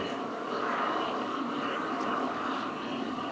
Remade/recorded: remade